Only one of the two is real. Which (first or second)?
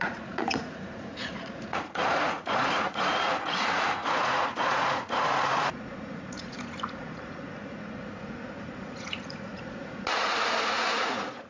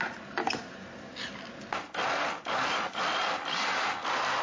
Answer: second